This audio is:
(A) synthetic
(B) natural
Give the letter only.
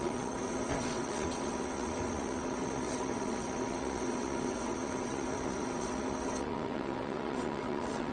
A